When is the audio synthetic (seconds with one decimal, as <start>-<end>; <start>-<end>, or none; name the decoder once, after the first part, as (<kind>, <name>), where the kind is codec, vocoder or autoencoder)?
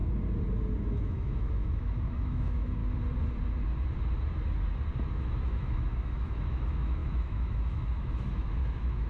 0.8-2.8 (autoencoder, DAC-VAE); 5.1-9.1